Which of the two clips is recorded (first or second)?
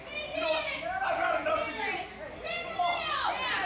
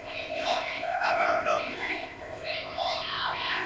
first